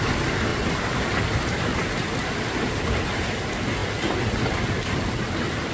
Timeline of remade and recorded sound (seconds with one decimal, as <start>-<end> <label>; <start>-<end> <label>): 0.0-5.7 recorded